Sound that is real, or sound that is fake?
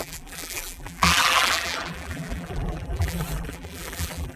fake